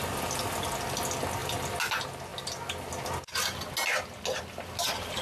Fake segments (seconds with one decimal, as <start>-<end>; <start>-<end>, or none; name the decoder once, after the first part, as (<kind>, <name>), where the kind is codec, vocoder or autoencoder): none